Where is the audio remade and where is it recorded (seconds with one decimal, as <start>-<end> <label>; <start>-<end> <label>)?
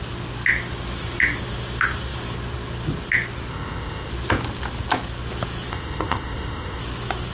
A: 0.0-3.5 recorded; 3.5-4.1 remade; 4.1-5.7 recorded; 5.7-6.8 remade; 6.8-7.3 recorded